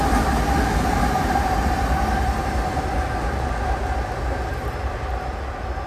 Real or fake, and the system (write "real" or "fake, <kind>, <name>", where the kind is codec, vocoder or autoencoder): real